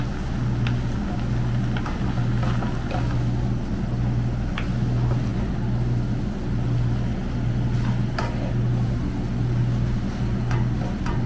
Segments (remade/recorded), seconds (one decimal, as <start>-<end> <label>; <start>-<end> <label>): 0.0-11.3 recorded